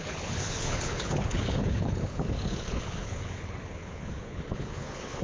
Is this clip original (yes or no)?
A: no